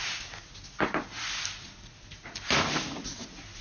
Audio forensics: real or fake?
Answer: real